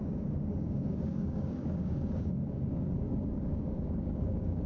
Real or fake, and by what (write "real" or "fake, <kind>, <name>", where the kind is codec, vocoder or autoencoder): fake, codec, DAC